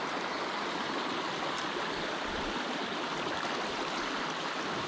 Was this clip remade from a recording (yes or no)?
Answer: no